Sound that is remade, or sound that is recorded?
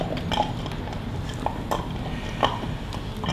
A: recorded